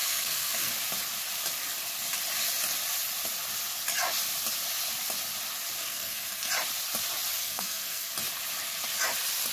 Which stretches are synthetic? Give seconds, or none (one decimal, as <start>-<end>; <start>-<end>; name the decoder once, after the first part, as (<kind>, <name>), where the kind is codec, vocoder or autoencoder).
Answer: 0.0-0.7 (codec, SNAC); 5.8-6.5; 7.4-8.1